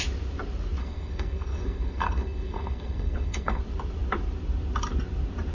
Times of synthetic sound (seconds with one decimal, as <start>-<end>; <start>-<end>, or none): 0.8-3.6